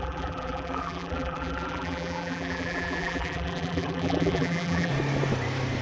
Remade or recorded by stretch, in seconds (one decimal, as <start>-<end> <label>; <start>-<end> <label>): 0.0-4.9 remade; 4.9-5.8 recorded